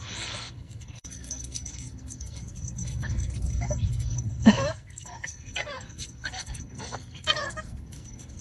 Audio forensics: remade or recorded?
remade